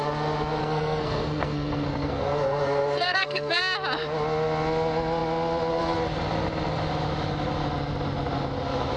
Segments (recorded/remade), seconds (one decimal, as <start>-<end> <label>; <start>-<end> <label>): 0.0-0.6 recorded; 0.6-3.6 remade; 3.6-9.0 recorded